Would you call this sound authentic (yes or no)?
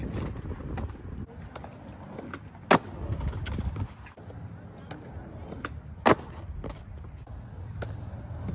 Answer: yes